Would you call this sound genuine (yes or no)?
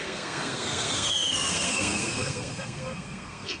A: no